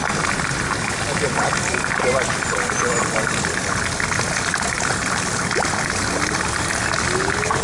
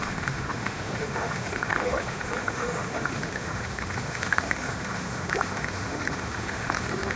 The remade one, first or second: second